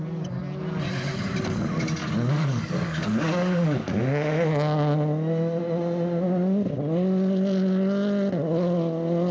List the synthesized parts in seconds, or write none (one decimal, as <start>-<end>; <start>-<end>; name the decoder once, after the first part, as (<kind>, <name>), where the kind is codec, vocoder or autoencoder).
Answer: 2.0-4.0 (codec, DAC)